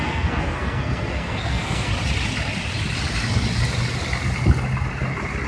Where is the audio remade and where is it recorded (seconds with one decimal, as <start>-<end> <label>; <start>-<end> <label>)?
0.0-1.9 remade; 1.9-5.5 recorded